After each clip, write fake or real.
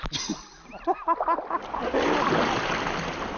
real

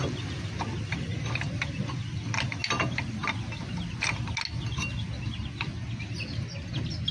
real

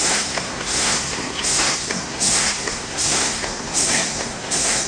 fake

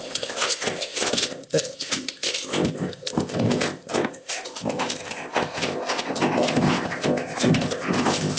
fake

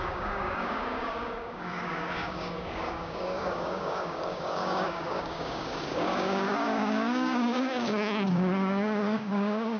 fake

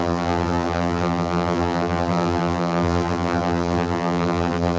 fake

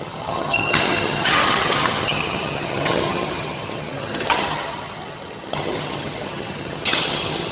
fake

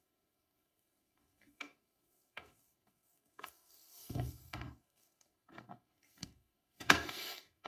fake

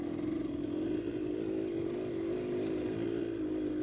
real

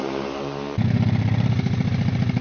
real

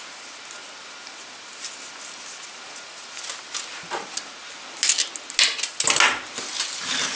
real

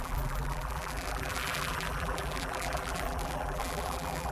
fake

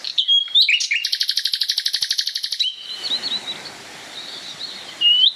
real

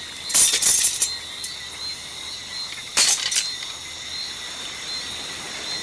real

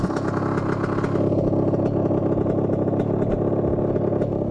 real